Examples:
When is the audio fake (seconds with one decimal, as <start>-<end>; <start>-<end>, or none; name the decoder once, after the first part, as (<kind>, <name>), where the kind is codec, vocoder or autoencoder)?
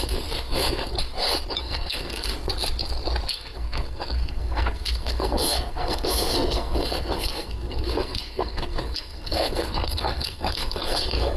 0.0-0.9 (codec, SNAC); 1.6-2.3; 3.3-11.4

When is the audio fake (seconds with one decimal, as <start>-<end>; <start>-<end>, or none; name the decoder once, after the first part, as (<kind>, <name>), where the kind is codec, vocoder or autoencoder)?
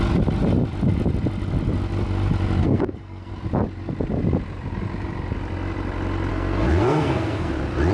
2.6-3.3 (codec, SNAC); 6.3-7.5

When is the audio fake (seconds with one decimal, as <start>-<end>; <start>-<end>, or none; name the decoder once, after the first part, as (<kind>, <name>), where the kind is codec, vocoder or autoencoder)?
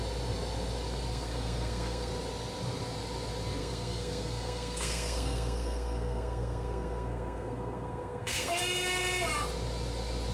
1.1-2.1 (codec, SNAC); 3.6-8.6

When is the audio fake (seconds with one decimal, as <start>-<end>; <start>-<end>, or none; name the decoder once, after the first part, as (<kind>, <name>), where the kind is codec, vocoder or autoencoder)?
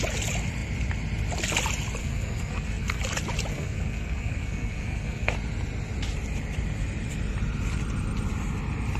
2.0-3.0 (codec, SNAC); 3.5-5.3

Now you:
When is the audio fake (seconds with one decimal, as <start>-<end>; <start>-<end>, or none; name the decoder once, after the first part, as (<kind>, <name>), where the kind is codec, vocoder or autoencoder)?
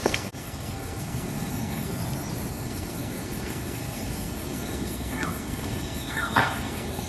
0.0-2.0 (codec, SNAC); 2.5-7.1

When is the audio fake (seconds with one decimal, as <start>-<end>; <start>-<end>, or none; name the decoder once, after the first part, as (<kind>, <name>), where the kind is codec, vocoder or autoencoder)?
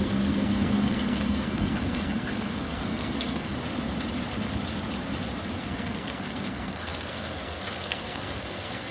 0.0-3.5 (codec, SNAC); 5.6-8.9